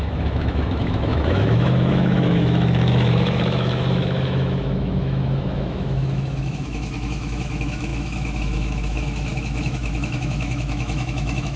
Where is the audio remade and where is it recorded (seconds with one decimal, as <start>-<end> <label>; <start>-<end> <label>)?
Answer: 0.0-11.6 remade